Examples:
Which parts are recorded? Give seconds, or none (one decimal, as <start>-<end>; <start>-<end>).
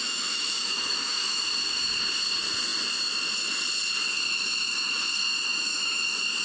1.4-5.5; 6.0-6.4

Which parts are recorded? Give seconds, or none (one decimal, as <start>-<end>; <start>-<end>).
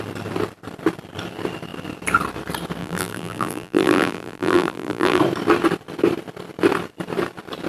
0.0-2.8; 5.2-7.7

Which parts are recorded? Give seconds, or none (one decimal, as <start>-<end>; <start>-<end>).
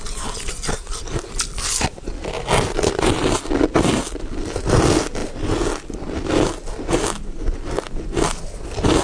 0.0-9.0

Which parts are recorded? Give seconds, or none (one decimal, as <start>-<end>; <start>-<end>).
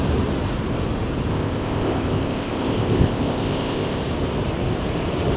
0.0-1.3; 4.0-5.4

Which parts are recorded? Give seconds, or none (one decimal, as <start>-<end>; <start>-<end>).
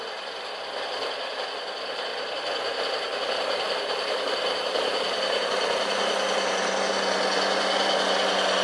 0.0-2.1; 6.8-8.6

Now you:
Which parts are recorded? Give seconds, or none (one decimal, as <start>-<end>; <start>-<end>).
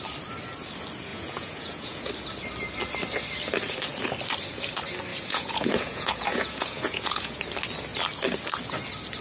0.0-1.1; 2.1-5.1; 7.4-9.2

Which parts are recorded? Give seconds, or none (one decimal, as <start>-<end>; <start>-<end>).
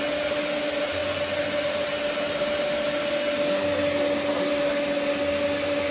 0.0-5.9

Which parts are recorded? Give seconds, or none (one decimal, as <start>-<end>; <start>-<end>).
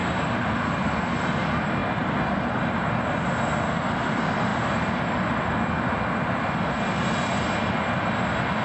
0.0-8.6